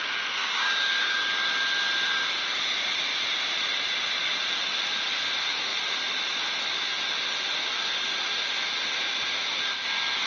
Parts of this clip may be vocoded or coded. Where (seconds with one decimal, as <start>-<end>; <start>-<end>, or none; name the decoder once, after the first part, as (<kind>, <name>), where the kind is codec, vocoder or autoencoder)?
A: 0.4-1.3 (codec, DAC)